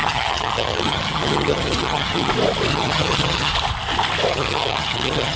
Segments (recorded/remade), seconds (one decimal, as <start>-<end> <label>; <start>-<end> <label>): 0.0-2.3 remade; 2.3-2.7 recorded; 2.7-3.5 remade; 3.5-4.3 recorded; 4.3-5.4 remade